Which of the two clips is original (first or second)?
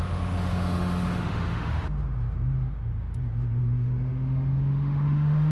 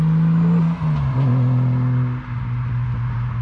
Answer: second